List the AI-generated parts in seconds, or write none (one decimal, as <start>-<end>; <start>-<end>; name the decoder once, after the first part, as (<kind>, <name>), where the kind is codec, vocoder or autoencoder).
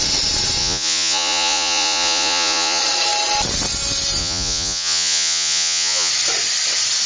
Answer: 0.6-2.8 (vocoder, Vocos); 4.2-6.1